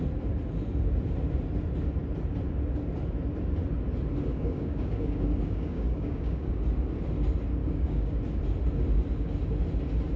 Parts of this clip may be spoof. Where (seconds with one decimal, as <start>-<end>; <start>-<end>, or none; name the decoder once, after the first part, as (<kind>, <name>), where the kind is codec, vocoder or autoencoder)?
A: 4.3-6.5 (codec, DAC); 7.6-8.2